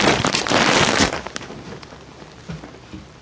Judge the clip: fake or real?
fake